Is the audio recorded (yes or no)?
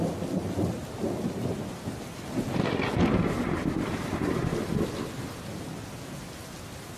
yes